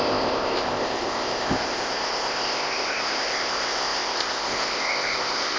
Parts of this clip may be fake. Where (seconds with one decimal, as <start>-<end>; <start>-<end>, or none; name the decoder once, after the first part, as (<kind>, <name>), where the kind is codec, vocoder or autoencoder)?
0.0-5.6 (codec, ZipCodec)